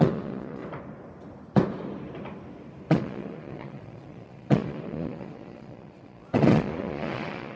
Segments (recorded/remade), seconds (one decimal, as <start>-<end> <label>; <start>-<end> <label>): 0.0-0.6 remade; 0.6-2.9 recorded; 2.9-7.6 remade